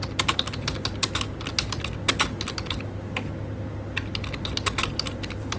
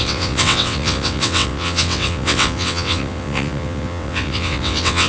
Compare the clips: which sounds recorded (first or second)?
first